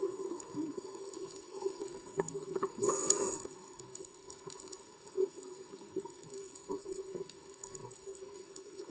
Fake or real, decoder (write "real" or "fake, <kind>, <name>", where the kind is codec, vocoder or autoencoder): fake, codec, SNAC